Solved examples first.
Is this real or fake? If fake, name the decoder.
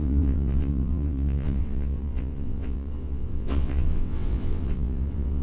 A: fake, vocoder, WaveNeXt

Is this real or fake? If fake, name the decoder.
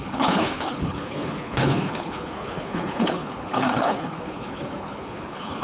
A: fake, codec, HILCodec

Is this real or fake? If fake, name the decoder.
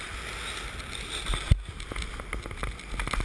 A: real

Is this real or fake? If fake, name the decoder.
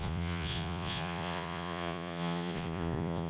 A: fake, vocoder, Vocos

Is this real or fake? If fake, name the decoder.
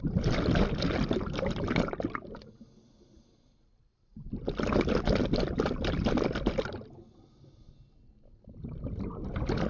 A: real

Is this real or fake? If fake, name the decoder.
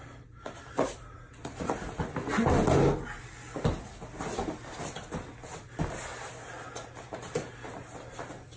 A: real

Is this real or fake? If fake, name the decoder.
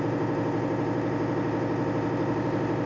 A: real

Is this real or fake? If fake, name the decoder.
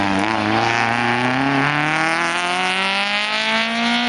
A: real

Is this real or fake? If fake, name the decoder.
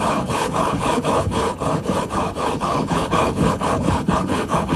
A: fake, codec, HILCodec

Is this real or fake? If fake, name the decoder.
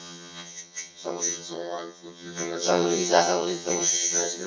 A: fake, vocoder, HiFi-GAN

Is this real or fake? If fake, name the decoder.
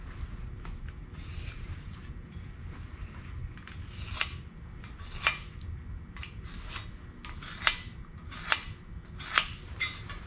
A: real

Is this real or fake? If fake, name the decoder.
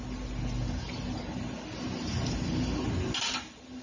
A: real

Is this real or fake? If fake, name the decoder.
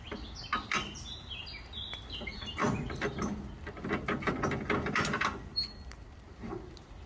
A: real